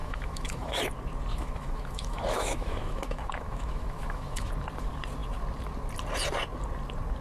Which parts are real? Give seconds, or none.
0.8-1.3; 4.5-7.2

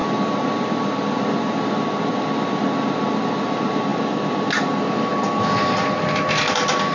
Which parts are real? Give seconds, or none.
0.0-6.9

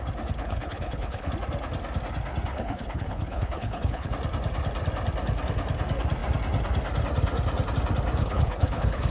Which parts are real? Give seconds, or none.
0.0-0.4; 1.3-2.5; 4.1-8.2

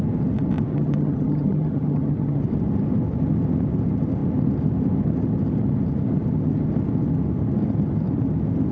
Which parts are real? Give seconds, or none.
0.0-0.7; 2.4-8.7

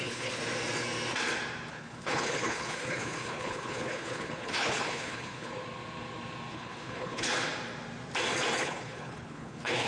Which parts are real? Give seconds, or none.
0.4-1.7; 5.5-6.5; 7.3-8.6